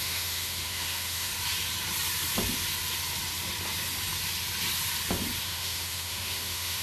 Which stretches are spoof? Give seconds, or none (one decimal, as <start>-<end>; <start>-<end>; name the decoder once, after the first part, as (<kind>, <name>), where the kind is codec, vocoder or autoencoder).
0.0-1.3 (autoencoder, DAC-VAE); 5.4-6.8